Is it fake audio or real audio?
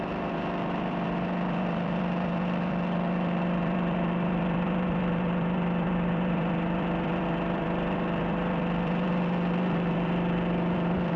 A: fake